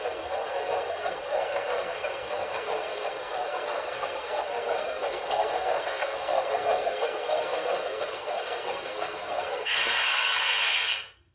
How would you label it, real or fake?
fake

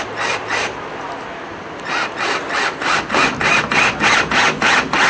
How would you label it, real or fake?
real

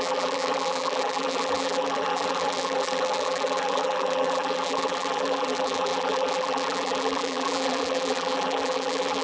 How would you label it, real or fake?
fake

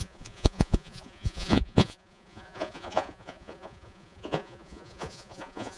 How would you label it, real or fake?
fake